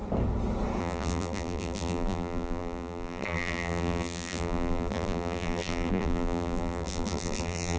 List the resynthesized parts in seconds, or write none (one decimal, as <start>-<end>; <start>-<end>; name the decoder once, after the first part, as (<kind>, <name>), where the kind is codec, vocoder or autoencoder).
0.8-7.8 (vocoder, BigVGAN v2)